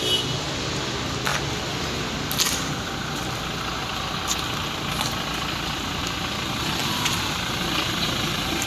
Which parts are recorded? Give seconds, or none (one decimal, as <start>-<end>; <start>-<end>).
0.0-6.8